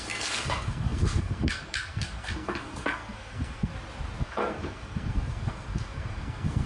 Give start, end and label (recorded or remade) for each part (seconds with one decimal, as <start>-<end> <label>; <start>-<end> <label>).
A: 0.0-3.7 remade; 3.7-4.2 recorded; 4.2-6.7 remade